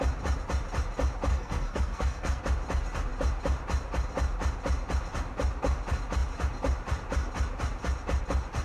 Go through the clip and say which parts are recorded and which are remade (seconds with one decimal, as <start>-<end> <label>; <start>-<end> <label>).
0.0-1.3 recorded; 1.3-2.4 remade; 2.4-8.6 recorded

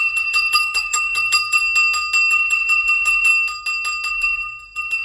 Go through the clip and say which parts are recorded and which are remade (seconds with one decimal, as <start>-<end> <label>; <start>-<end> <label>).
0.0-1.6 remade; 1.6-2.3 recorded; 2.3-3.3 remade; 3.3-4.1 recorded; 4.1-5.0 remade

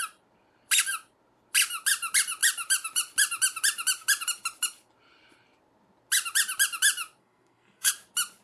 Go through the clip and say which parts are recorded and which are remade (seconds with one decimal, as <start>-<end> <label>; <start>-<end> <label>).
0.0-7.2 recorded; 7.2-7.9 remade; 7.9-8.4 recorded

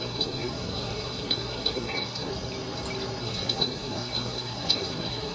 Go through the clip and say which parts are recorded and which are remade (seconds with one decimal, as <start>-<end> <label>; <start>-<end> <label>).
0.0-2.3 remade; 2.3-3.2 recorded; 3.2-5.3 remade

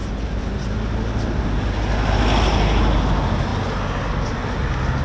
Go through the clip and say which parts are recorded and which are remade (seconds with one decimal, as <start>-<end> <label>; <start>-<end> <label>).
0.0-5.0 recorded

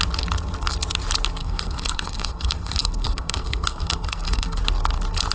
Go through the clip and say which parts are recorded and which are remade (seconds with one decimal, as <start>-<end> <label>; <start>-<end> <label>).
0.0-1.4 recorded; 1.4-4.6 remade; 4.6-5.3 recorded

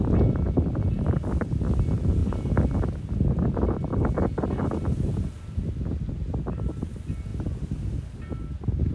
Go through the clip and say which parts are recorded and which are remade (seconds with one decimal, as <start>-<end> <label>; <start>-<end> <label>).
0.0-8.9 recorded